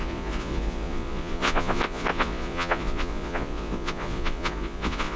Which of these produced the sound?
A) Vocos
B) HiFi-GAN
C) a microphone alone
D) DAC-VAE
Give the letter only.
A